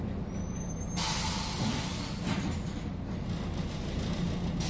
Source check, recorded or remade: recorded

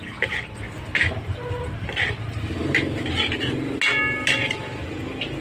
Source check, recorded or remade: recorded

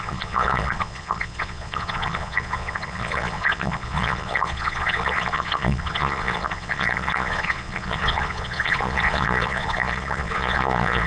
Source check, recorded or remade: remade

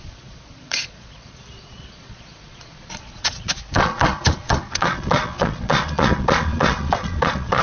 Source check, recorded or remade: remade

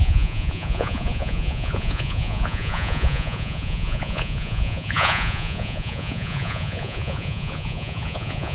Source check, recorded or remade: remade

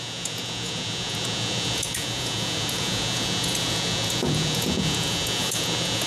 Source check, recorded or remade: remade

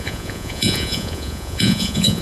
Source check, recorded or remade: remade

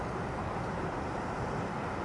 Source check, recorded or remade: recorded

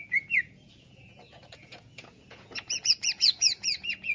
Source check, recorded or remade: remade